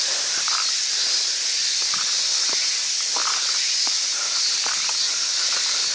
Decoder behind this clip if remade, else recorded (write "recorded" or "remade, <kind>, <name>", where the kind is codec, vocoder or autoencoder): recorded